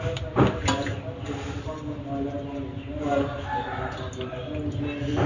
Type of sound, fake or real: real